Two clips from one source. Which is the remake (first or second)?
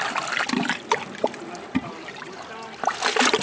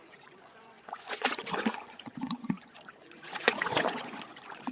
second